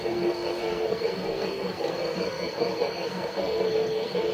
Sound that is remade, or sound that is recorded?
remade